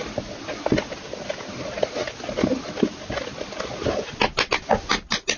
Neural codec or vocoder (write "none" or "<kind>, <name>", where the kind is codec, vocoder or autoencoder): none